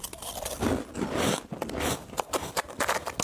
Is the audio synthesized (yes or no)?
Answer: no